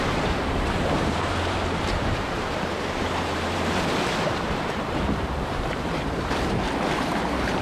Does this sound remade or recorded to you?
remade